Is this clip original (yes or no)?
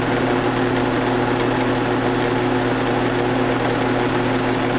yes